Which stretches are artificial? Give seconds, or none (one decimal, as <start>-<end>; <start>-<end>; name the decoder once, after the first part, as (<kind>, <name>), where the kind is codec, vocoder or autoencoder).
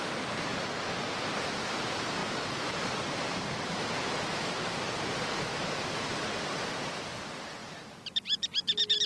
2.2-6.3 (vocoder, BigVGAN v2); 7.6-8.2